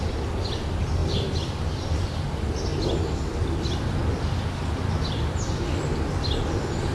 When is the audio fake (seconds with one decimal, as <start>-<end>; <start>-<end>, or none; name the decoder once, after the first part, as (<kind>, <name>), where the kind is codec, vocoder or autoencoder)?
1.0-2.2 (vocoder, BigVGAN v2)